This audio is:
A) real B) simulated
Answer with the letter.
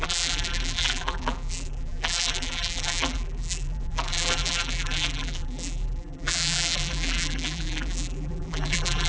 B